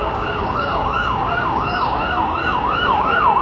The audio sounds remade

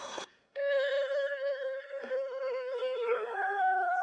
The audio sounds remade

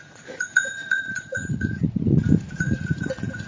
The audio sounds remade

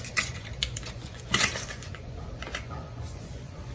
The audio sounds remade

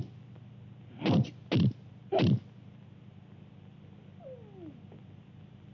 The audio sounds recorded